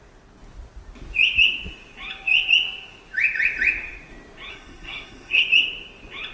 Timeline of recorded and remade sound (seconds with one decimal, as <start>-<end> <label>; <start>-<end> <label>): 0.0-4.5 recorded; 4.5-5.4 remade; 5.4-6.3 recorded